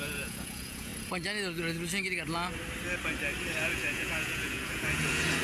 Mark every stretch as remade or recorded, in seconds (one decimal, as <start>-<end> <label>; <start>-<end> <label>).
0.0-0.9 remade; 0.9-3.5 recorded; 3.5-5.4 remade

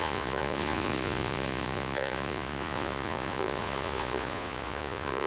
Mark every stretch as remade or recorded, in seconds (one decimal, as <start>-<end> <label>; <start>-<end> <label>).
0.0-5.3 remade

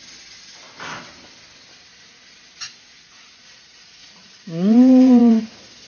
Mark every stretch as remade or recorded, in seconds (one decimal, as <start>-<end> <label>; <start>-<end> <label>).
0.0-1.9 recorded; 1.9-5.4 remade; 5.4-5.9 recorded

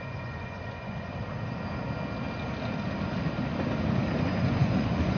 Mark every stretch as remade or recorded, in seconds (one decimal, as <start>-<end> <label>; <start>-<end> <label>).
0.0-1.1 remade; 1.1-4.2 recorded; 4.2-5.2 remade

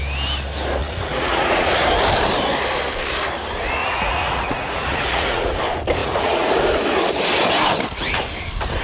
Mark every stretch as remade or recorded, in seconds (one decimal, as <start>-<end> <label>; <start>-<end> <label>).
0.0-0.8 recorded; 0.8-1.7 remade; 1.7-3.8 recorded; 3.8-5.6 remade; 5.6-6.0 recorded; 6.0-6.5 remade; 6.5-8.8 recorded